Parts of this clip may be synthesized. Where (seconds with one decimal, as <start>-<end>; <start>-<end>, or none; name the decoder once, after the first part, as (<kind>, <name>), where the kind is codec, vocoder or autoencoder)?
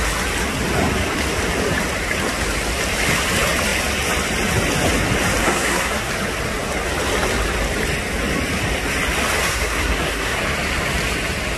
5.4-6.1 (codec, SNAC); 9.4-10.4